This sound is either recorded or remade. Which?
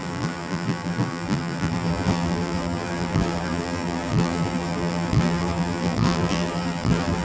remade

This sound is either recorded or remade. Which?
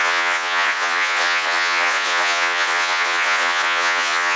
remade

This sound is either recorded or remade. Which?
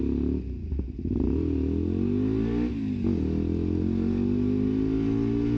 recorded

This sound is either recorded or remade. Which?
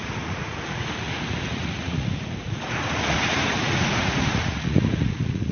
remade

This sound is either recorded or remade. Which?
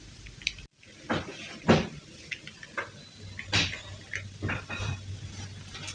recorded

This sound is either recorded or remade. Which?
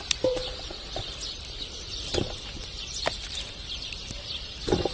remade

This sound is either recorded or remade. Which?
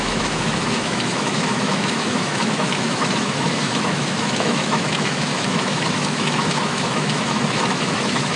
remade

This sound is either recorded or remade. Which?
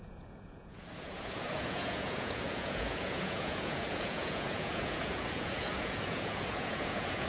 remade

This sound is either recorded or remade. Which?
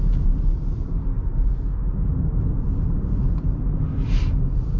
remade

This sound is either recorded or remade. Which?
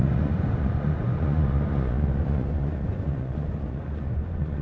remade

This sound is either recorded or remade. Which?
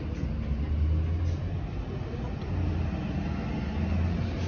recorded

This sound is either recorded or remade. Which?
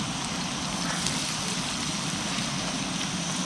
recorded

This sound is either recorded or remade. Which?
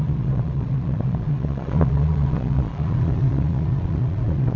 remade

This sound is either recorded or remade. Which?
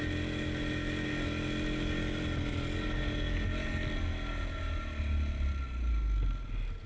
recorded